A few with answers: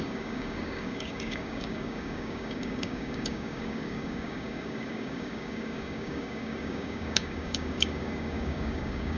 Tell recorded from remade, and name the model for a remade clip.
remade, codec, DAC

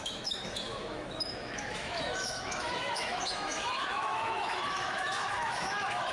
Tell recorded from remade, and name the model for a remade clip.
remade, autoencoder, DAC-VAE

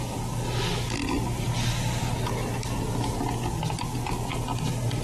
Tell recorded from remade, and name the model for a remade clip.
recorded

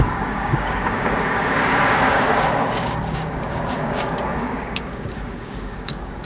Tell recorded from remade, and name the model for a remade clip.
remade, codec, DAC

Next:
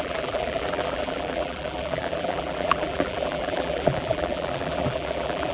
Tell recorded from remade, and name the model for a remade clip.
remade, vocoder, BigVGAN v2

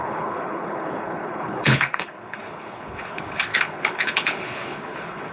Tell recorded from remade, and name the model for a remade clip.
remade, codec, HILCodec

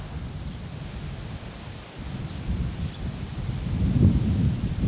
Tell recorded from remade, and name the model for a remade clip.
recorded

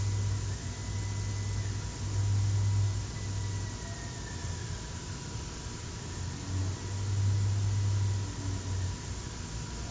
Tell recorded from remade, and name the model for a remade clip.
recorded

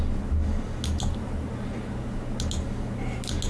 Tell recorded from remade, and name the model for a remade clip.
recorded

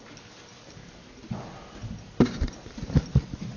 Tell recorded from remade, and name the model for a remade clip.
recorded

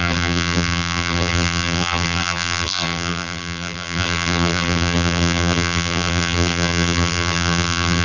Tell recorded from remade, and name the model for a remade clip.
remade, vocoder, BigVGAN v2